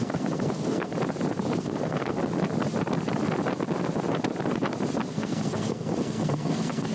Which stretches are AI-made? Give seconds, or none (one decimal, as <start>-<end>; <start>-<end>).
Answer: 0.0-0.9; 1.5-2.2; 5.1-6.9